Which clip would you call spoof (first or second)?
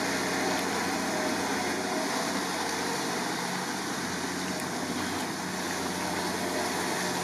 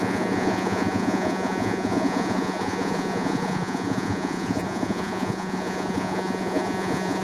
second